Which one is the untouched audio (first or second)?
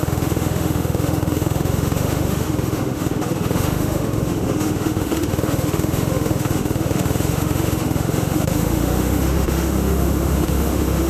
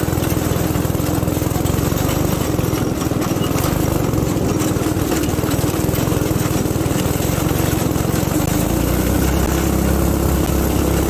second